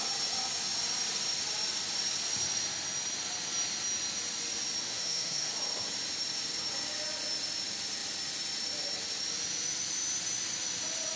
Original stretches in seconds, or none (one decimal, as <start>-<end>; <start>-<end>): 0.0-4.8; 5.5-11.2